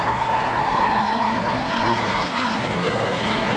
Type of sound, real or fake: fake